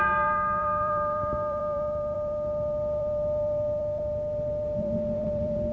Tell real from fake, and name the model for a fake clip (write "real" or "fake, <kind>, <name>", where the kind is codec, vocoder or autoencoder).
fake, vocoder, BigVGAN v2